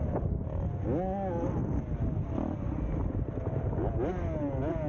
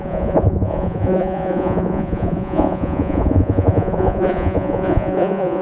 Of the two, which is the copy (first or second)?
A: second